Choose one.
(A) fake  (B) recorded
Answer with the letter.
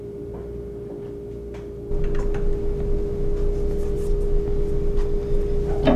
B